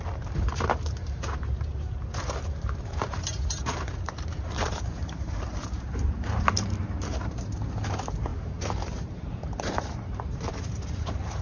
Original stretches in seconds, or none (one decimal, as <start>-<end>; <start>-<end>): none